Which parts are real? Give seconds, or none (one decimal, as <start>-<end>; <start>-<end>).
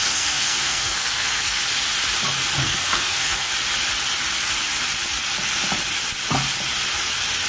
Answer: 1.6-2.6; 3.5-7.5